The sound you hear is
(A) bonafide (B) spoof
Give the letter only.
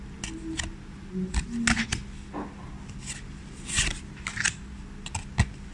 A